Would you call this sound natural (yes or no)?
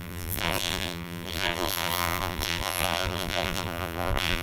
no